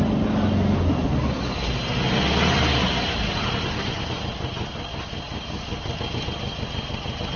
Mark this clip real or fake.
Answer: real